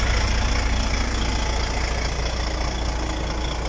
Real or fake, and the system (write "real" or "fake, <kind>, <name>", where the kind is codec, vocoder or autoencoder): real